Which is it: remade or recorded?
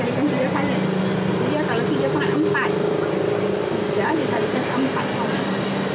recorded